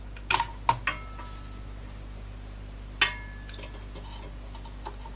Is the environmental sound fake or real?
real